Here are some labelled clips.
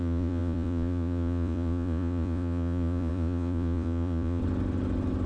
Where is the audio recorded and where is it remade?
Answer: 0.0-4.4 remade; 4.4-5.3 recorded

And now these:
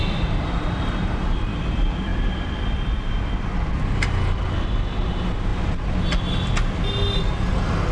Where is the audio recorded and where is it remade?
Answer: 0.0-5.5 remade; 5.5-7.9 recorded

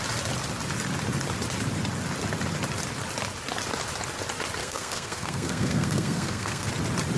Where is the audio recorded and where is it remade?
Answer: 0.0-4.6 recorded; 4.6-6.7 remade; 6.7-7.2 recorded

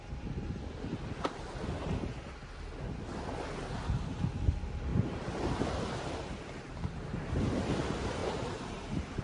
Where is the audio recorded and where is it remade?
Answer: 0.0-0.9 recorded; 0.9-1.5 remade; 1.5-4.9 recorded; 4.9-7.4 remade; 7.4-8.2 recorded; 8.2-9.2 remade

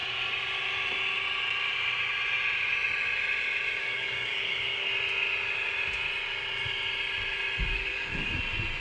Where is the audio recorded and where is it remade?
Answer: 0.0-3.8 recorded; 3.8-4.9 remade; 4.9-7.7 recorded; 7.7-8.4 remade; 8.4-8.8 recorded

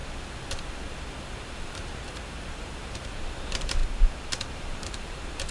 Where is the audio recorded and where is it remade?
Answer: 0.0-1.2 recorded; 1.2-3.8 remade; 3.8-4.5 recorded; 4.5-5.5 remade

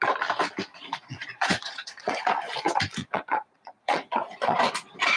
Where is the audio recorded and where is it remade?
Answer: 0.0-0.7 recorded; 0.7-2.2 remade; 2.2-3.0 recorded; 3.0-4.6 remade; 4.6-5.2 recorded

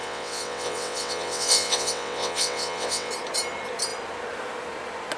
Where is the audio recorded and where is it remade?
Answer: 0.0-3.1 remade; 3.1-5.2 recorded